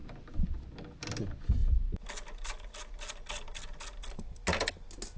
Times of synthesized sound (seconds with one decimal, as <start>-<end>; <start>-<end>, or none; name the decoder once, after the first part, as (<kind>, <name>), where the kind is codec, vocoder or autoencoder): none